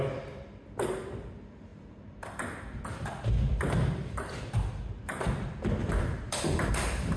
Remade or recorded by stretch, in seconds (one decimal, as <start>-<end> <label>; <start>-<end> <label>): 0.0-7.2 recorded